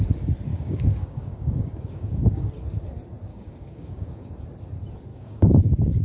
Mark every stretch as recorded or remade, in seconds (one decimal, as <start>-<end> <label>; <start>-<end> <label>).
0.0-0.5 recorded; 0.5-2.5 remade; 2.5-3.3 recorded; 3.3-4.3 remade; 4.3-5.1 recorded; 5.1-6.0 remade